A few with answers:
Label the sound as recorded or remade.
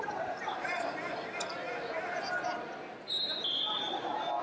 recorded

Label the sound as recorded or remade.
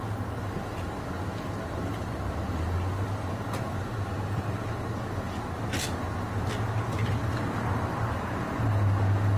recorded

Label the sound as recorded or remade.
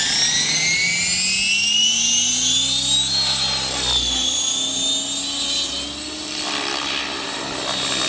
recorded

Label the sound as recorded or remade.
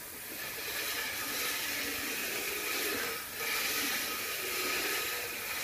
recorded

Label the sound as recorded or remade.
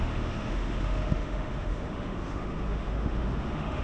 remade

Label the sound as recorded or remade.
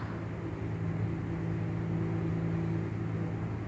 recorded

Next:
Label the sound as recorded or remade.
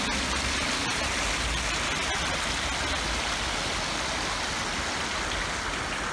recorded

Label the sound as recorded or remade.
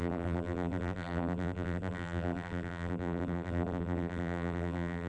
remade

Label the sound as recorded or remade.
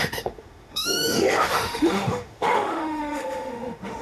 remade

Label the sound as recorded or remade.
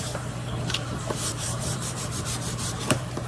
remade